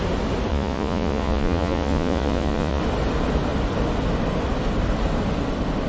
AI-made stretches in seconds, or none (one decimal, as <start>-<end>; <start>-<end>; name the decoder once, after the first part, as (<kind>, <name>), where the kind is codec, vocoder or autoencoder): 0.5-2.8 (vocoder, Vocos)

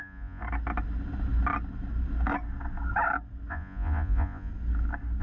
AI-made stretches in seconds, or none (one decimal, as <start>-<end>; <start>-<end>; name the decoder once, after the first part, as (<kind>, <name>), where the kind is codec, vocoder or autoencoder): 0.0-0.4 (vocoder, Vocos); 3.5-4.5